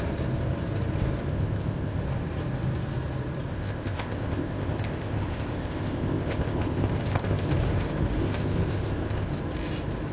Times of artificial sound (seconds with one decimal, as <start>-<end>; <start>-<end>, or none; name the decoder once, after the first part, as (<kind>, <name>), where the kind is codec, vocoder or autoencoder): 1.3-2.0 (codec, ZipCodec); 3.5-7.5; 8.2-9.3